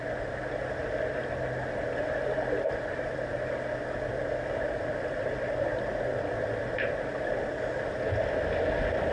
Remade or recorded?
recorded